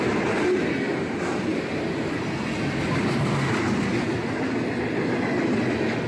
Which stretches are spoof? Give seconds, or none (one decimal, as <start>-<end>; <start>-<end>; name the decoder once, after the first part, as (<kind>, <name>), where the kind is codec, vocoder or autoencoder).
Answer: none